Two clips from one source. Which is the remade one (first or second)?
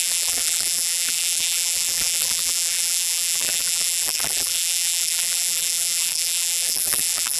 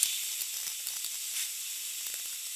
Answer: first